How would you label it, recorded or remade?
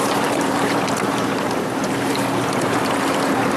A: remade